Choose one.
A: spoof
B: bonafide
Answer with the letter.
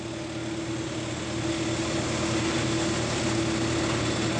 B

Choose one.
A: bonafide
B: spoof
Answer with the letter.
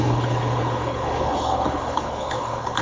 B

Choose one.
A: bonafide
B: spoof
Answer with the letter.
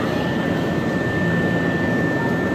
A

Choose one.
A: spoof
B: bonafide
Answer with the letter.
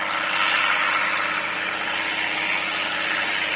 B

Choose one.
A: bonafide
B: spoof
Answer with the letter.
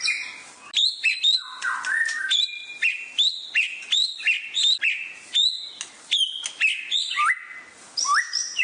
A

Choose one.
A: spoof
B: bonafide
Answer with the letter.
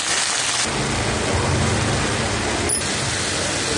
B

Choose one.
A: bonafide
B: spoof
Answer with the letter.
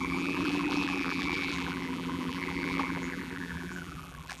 B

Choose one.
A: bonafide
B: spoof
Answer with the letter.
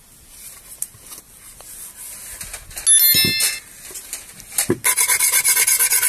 A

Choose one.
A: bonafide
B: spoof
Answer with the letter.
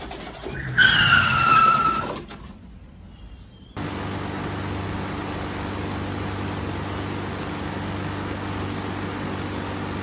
A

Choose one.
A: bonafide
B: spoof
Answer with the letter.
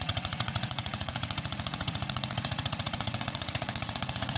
B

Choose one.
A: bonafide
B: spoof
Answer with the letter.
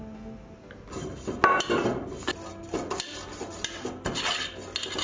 A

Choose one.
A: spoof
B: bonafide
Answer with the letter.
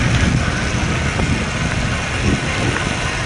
B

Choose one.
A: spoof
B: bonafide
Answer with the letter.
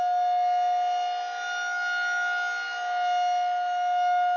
B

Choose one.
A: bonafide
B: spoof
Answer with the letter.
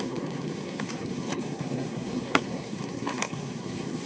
B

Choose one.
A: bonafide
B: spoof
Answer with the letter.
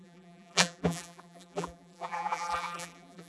B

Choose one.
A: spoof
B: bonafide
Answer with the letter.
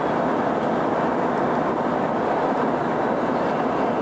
B